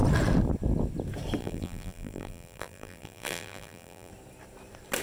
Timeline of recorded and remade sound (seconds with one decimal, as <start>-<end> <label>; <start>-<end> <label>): 0.0-1.4 recorded; 1.4-4.1 remade; 4.1-5.0 recorded